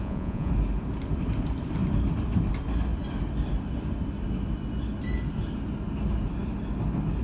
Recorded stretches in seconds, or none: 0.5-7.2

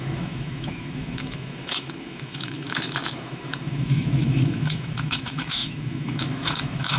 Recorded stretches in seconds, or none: none

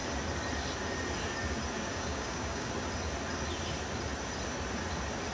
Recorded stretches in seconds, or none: 0.0-1.9; 2.7-5.3

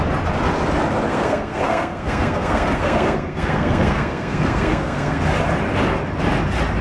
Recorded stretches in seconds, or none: 0.0-1.1; 5.2-6.8

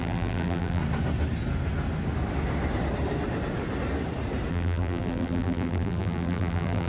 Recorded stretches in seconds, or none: 0.8-4.5